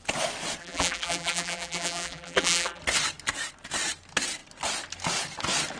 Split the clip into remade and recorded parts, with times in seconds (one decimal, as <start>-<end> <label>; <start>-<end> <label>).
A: 0.0-0.6 recorded; 0.6-2.8 remade; 2.8-5.8 recorded